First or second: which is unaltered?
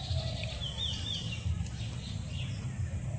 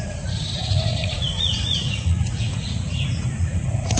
first